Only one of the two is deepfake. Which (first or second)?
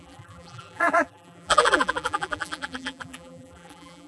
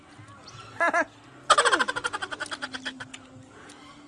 first